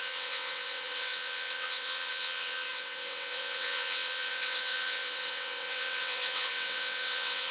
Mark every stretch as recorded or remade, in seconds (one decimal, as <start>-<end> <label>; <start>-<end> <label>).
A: 0.0-7.5 remade

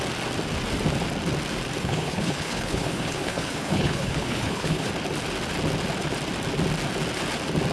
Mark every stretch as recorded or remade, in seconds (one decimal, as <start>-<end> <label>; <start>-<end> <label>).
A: 0.0-1.8 recorded; 1.8-4.9 remade; 4.9-7.7 recorded